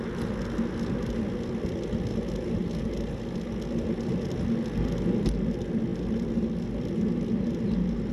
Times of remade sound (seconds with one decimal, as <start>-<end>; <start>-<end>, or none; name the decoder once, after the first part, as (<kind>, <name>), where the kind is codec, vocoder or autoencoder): none